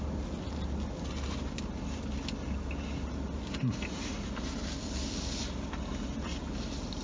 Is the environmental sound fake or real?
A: real